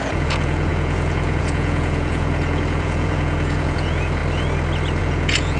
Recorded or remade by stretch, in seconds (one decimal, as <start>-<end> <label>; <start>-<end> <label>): 0.0-4.2 remade; 4.2-5.0 recorded; 5.0-5.6 remade